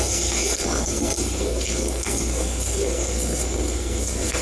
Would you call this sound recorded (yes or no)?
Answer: no